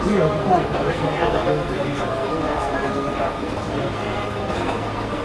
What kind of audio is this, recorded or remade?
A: remade